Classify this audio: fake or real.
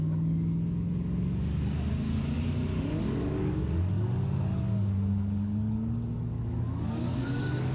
fake